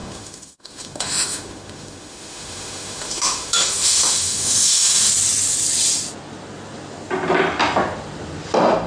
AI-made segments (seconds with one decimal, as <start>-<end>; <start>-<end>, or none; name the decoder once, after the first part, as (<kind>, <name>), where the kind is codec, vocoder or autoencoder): 0.0-5.1 (autoencoder, DAC-VAE)